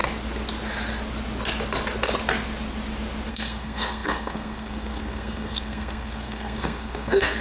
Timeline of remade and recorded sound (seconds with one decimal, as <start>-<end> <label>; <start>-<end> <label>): 0.0-3.3 recorded; 3.3-7.4 remade